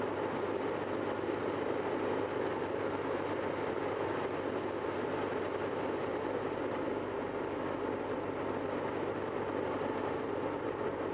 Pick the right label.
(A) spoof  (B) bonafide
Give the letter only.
B